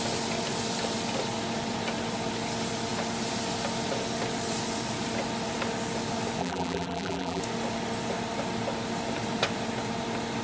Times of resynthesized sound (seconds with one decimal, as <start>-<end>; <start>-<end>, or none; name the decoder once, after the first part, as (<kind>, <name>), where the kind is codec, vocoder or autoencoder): 6.4-7.4 (vocoder, BigVGAN v2)